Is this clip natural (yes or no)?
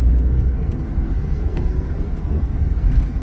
no